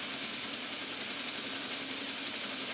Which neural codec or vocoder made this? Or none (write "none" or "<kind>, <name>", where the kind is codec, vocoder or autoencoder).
none